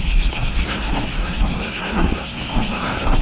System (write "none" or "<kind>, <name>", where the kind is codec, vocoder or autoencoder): codec, SNAC